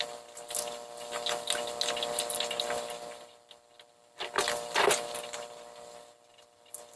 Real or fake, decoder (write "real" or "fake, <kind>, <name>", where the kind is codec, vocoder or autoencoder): real